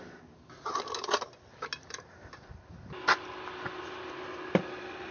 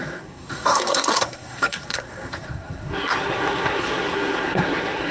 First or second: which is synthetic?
second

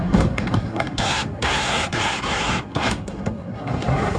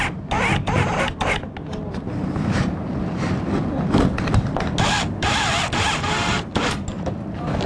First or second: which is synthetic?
first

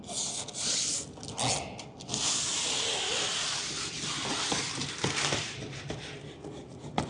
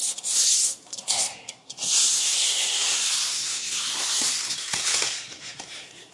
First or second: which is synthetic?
second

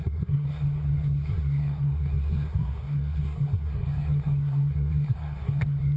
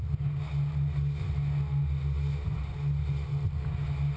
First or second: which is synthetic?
first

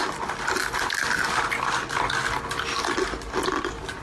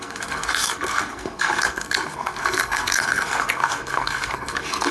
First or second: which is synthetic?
second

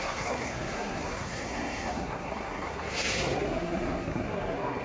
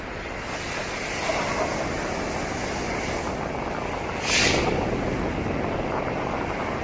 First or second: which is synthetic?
first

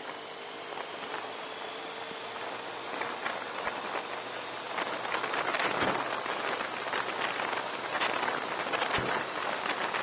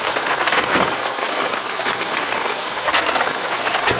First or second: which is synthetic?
second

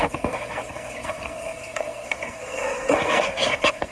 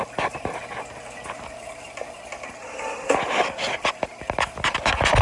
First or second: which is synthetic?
first